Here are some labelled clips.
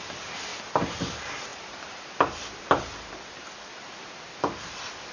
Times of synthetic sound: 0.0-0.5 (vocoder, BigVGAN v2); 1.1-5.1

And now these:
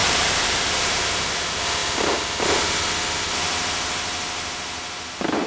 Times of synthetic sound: 0.0-1.1 (vocoder, BigVGAN v2)

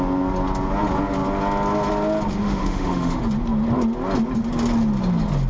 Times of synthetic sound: 2.4-3.2 (autoencoder, DAC-VAE)

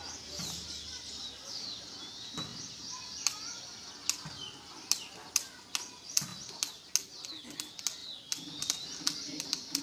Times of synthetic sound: none